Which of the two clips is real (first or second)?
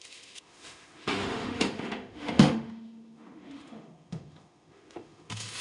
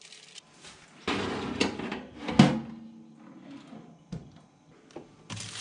second